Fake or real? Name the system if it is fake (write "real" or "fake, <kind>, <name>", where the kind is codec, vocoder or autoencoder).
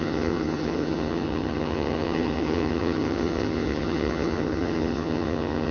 fake, vocoder, HiFi-GAN